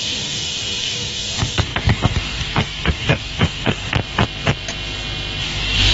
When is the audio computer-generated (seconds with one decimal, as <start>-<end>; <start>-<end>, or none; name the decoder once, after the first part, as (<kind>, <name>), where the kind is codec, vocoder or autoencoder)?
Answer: 0.0-3.9 (codec, DAC); 5.4-5.9

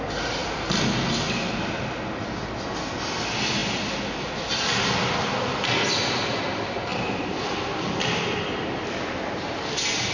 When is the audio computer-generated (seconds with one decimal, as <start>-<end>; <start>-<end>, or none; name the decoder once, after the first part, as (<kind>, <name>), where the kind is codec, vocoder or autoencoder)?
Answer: none

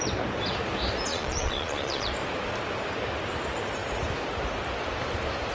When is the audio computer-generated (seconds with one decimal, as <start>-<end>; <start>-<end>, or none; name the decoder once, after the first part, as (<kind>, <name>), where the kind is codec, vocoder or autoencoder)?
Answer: 1.1-2.1 (vocoder, Vocos)

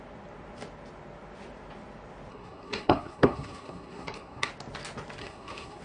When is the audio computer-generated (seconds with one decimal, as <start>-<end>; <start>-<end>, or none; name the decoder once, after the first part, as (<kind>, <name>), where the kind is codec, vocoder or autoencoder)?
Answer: 2.3-4.5 (codec, SNAC); 5.2-5.8

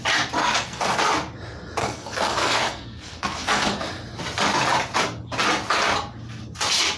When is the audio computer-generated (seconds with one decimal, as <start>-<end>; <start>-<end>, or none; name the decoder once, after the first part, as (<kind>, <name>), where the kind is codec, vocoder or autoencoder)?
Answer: 0.4-1.0 (codec, SNAC); 1.8-3.8

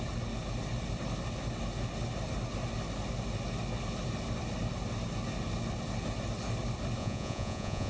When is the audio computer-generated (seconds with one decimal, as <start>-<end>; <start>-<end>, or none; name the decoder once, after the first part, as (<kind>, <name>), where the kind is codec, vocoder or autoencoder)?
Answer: 7.0-7.9 (vocoder, Vocos)

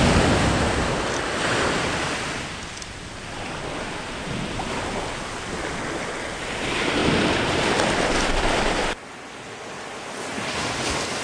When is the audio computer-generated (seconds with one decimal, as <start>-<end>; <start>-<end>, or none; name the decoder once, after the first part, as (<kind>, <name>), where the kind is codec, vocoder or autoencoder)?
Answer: none

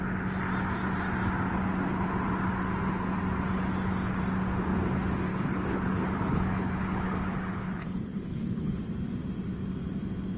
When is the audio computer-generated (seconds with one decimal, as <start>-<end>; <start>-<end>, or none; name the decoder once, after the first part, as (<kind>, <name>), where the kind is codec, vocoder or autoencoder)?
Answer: 5.3-8.8 (codec, HILCodec)